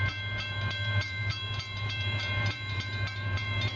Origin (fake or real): fake